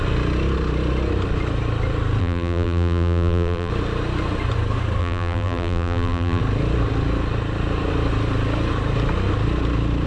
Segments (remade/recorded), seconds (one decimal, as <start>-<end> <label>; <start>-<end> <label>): 0.0-2.2 recorded; 2.2-3.7 remade; 3.7-5.0 recorded; 5.0-6.4 remade; 6.4-10.1 recorded